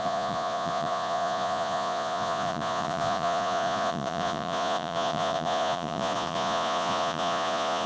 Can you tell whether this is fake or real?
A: fake